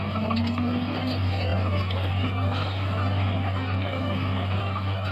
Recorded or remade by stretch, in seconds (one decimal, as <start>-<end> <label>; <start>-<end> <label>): 0.0-5.1 remade